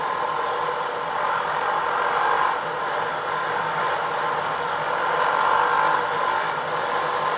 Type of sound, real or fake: real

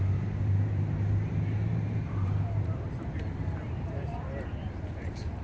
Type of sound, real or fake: fake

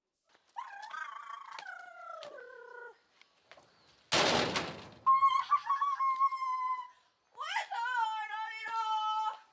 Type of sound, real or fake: real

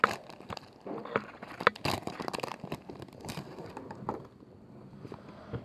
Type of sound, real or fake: real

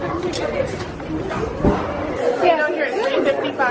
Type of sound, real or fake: real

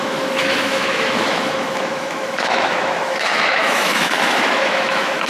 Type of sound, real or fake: fake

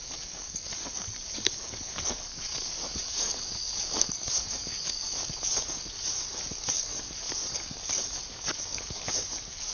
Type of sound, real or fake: fake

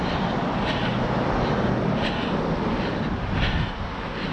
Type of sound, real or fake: real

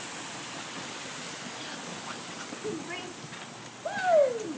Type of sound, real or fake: real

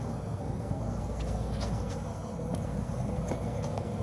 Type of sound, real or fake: fake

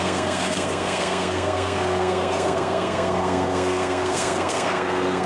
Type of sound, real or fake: fake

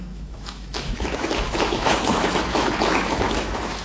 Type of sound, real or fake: fake